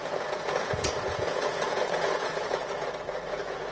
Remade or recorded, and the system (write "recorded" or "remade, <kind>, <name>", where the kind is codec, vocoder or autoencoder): remade, vocoder, Vocos